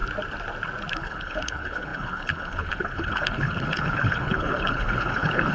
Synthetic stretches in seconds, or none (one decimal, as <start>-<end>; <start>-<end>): 0.9-5.5